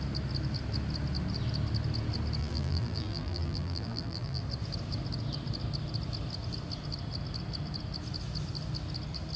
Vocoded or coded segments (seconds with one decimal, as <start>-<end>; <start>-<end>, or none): 2.4-4.4